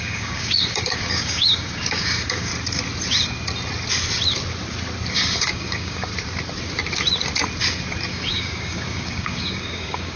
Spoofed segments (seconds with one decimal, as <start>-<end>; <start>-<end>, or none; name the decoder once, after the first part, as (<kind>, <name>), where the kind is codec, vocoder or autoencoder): 0.0-2.5 (codec, DAC); 5.1-6.1; 8.1-10.2